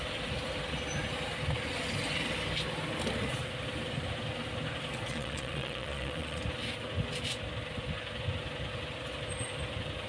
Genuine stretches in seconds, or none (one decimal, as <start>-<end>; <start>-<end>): 0.0-5.1; 6.4-10.1